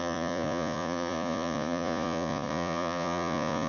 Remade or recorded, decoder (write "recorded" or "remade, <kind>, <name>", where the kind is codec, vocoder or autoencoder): remade, vocoder, Vocos